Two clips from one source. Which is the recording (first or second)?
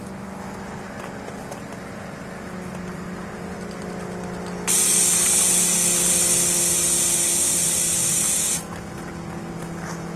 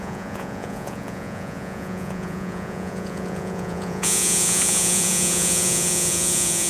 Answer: first